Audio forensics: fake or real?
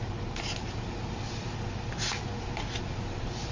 real